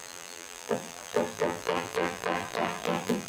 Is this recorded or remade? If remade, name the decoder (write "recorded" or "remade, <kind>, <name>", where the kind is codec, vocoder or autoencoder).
remade, vocoder, BigVGAN v2